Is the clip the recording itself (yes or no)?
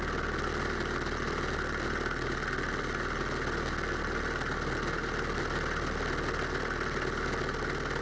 yes